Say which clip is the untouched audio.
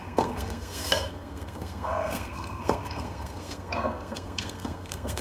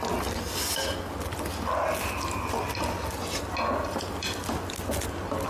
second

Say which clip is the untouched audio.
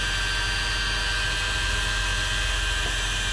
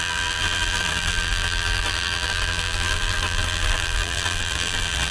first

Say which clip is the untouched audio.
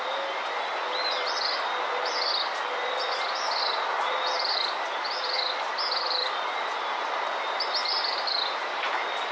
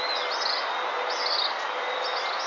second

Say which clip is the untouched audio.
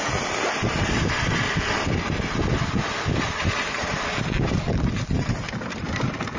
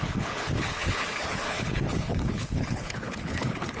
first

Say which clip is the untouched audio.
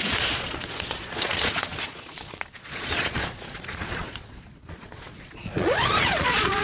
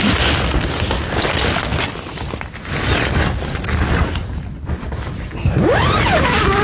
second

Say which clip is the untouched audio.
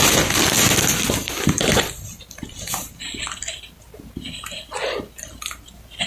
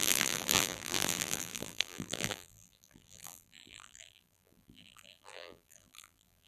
first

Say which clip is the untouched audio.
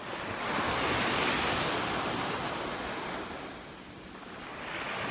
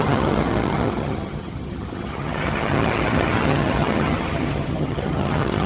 first